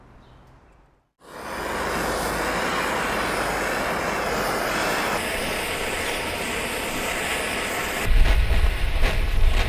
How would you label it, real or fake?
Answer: real